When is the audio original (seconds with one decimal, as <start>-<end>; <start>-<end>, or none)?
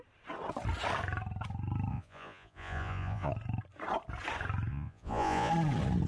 0.0-1.9; 3.3-4.7; 5.5-6.1